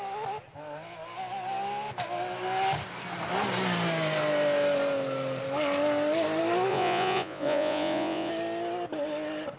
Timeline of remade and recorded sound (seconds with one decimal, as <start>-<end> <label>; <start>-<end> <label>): 0.0-6.7 recorded; 6.7-8.3 remade; 8.3-9.6 recorded

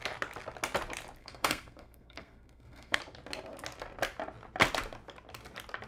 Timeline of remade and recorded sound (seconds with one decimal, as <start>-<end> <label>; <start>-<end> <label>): 0.0-1.2 recorded; 1.2-3.0 remade; 3.0-5.9 recorded

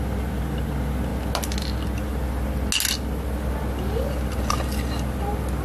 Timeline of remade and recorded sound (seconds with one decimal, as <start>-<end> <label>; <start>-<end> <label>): 0.0-5.6 recorded

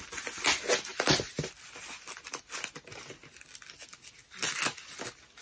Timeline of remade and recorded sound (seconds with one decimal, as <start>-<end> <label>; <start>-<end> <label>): 0.0-0.9 recorded; 0.9-1.5 remade; 1.5-5.4 recorded

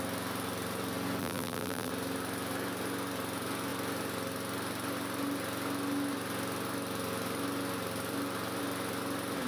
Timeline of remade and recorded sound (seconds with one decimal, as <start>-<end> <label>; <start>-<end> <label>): 0.0-1.2 recorded; 1.2-1.9 remade; 1.9-9.5 recorded